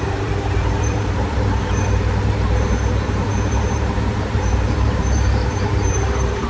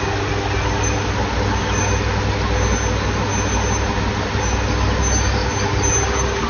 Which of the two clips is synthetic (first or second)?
first